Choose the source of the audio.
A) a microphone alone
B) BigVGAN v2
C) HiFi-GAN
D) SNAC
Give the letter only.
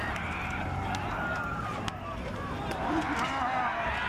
A